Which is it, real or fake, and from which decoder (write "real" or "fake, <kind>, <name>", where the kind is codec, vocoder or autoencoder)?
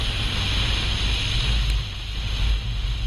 real